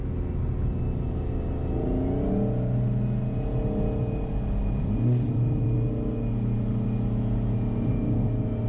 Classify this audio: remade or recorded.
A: recorded